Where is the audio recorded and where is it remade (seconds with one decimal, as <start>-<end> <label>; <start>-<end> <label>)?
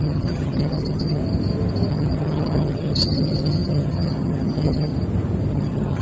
0.0-1.2 remade; 1.2-1.9 recorded; 1.9-4.9 remade; 4.9-5.5 recorded; 5.5-6.0 remade